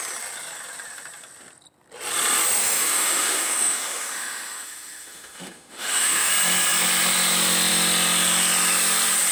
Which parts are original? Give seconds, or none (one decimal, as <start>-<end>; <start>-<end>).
0.0-2.6; 6.3-9.3